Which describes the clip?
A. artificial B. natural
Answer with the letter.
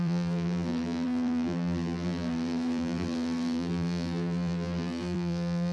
A